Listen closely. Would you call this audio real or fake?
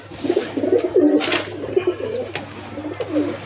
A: real